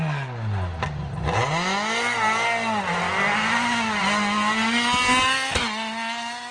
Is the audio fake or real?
real